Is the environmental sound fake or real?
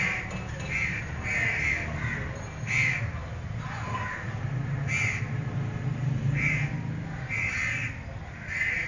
real